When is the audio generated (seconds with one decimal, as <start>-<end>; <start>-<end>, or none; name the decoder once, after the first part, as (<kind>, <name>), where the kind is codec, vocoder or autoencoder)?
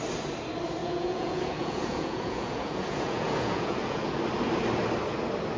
0.8-4.2 (vocoder, Vocos)